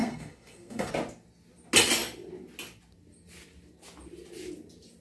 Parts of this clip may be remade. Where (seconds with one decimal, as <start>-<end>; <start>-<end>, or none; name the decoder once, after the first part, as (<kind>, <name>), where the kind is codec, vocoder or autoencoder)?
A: 0.0-0.9 (codec, SNAC)